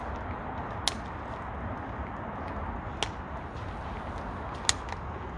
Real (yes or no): yes